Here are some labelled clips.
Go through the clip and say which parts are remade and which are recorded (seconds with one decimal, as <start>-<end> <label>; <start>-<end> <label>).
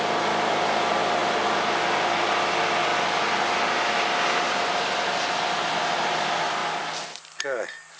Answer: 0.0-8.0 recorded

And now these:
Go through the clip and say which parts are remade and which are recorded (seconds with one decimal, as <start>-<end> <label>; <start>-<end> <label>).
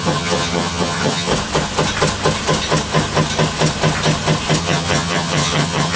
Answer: 0.0-1.3 remade; 1.3-4.6 recorded; 4.6-6.0 remade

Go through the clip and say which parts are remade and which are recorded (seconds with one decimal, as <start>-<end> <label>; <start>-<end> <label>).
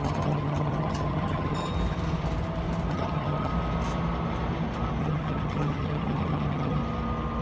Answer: 0.0-1.7 remade; 1.7-2.9 recorded; 2.9-3.5 remade; 3.5-5.0 recorded; 5.0-6.8 remade; 6.8-7.4 recorded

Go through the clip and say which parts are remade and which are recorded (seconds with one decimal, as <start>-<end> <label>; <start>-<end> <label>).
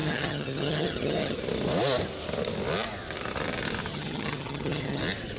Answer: 0.0-1.4 remade; 1.4-3.9 recorded; 3.9-5.0 remade; 5.0-5.4 recorded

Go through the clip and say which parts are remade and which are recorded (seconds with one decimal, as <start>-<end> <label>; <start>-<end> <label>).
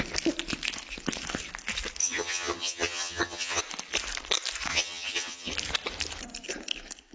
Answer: 0.0-2.0 recorded; 2.0-3.6 remade; 3.6-4.7 recorded; 4.7-5.5 remade; 5.5-7.1 recorded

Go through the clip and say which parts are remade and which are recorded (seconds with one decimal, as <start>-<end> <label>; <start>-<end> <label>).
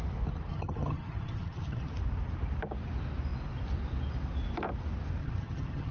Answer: 0.0-0.5 recorded; 0.5-1.9 remade; 1.9-5.2 recorded; 5.2-5.9 remade